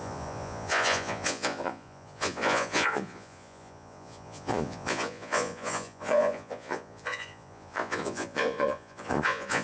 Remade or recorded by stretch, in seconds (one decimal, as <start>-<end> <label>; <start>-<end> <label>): 0.0-9.6 remade